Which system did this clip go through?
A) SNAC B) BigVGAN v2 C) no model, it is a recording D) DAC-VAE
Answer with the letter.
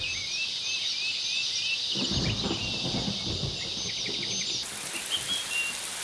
C